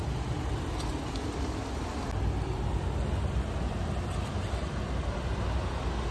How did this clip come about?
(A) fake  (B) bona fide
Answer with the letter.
B